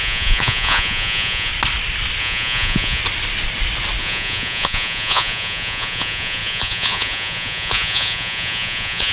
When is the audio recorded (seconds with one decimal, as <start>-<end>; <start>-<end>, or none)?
1.5-2.2; 3.0-4.0